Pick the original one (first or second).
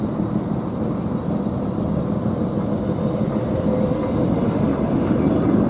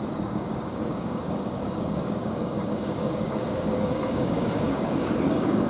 first